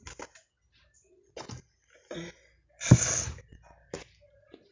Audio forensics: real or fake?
real